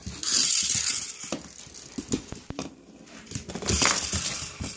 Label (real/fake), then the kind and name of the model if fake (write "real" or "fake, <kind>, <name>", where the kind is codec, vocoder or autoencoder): real